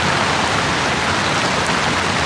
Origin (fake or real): real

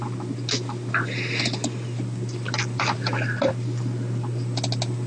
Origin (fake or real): real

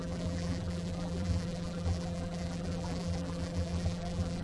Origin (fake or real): fake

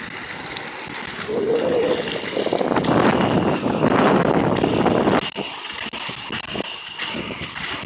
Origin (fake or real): real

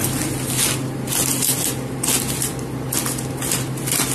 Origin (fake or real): real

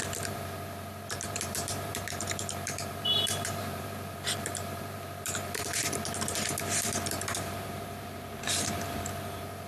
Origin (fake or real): fake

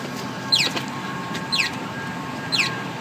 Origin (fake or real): fake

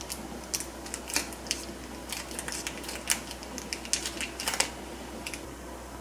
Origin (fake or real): real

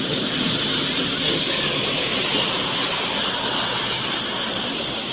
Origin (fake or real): real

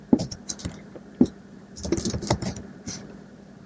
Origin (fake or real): fake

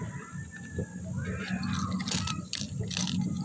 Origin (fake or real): real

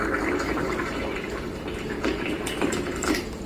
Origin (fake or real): fake